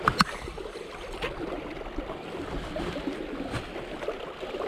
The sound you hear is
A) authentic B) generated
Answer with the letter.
A